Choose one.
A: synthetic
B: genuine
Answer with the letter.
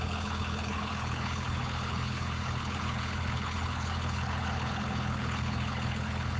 A